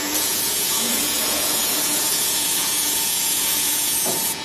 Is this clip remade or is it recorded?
remade